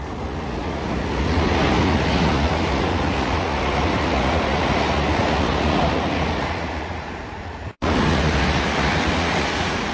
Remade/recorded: remade